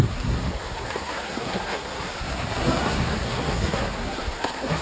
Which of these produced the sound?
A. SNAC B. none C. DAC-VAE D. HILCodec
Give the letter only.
A